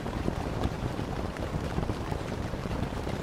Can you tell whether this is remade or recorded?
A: remade